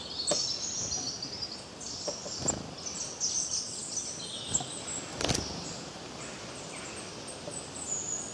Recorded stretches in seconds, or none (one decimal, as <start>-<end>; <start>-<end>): 0.0-8.3